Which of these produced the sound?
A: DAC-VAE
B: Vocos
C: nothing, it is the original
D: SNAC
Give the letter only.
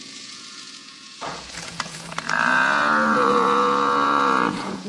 B